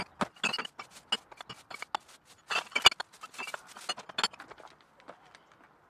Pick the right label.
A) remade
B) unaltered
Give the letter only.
B